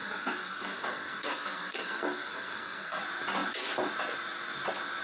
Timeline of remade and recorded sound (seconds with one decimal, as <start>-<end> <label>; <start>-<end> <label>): 0.0-3.0 remade; 3.0-5.0 recorded